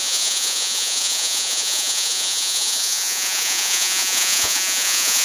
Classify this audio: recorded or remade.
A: remade